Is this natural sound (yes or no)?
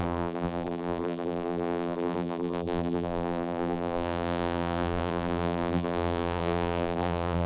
no